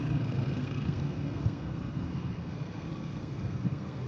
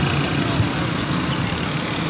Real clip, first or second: second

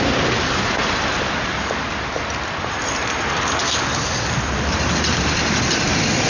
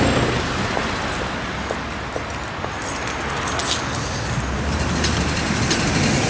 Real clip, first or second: second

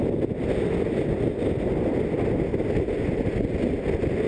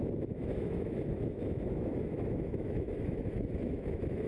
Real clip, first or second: first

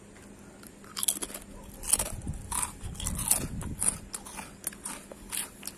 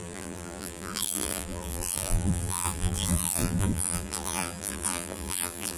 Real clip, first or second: first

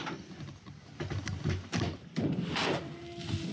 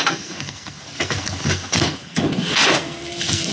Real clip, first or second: first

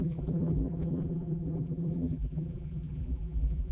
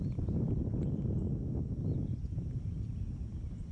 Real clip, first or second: second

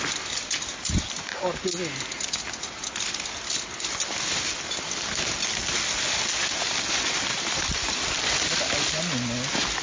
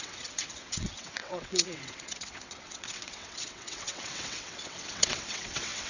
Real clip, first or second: first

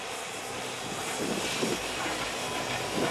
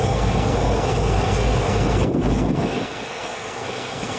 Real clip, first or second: first